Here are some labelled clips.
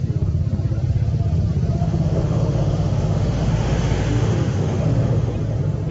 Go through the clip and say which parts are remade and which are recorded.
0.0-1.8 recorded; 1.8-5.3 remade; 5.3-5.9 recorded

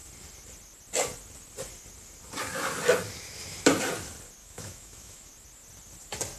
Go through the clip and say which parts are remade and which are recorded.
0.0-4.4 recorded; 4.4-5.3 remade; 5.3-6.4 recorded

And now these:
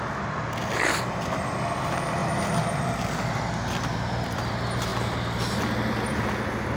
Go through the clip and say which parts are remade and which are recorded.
0.0-6.8 recorded